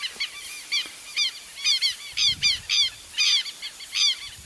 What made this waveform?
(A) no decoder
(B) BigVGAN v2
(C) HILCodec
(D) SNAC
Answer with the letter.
B